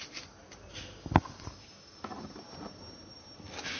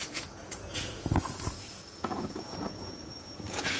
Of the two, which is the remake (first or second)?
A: second